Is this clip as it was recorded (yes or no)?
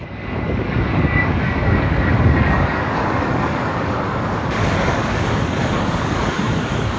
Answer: no